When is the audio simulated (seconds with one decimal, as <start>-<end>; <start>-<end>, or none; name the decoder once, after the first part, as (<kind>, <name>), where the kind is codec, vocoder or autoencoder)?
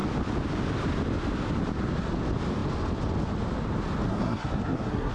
4.1-5.1 (codec, SNAC)